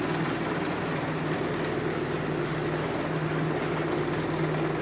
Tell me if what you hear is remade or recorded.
recorded